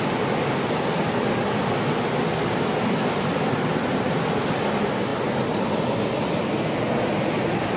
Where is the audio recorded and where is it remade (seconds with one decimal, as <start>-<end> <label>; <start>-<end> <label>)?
0.0-7.8 recorded